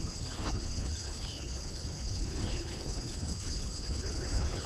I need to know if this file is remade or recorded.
remade